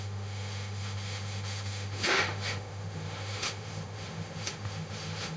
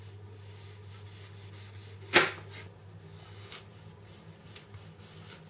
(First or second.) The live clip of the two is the second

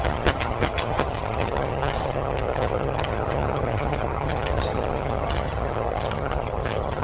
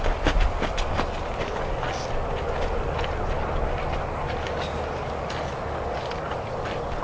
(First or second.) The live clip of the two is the second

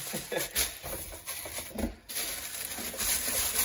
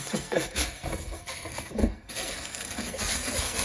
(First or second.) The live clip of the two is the first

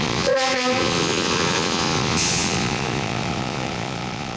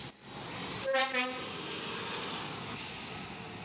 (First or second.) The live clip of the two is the second